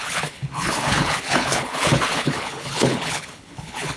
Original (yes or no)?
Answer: no